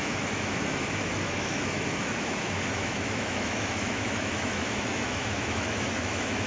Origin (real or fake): fake